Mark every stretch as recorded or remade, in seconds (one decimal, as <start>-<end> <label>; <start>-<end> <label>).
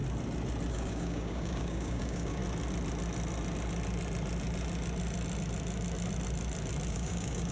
0.0-0.7 recorded; 0.7-2.4 remade; 2.4-6.9 recorded; 6.9-7.5 remade